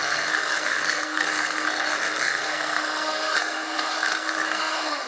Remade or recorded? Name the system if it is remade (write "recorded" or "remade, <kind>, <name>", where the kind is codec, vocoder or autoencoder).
remade, codec, SNAC